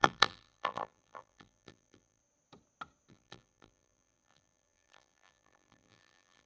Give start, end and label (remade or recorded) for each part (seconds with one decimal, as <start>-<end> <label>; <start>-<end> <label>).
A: 0.0-2.2 remade; 2.2-3.1 recorded; 3.1-6.5 remade